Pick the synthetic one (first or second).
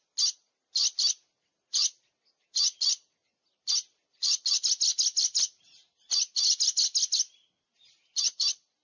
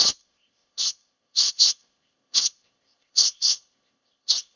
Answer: second